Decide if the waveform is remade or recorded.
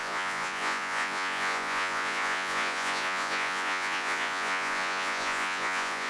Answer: remade